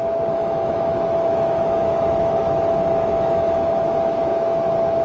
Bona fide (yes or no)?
no